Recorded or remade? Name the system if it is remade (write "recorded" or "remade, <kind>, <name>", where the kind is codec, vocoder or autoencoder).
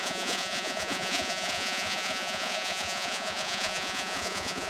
remade, vocoder, Vocos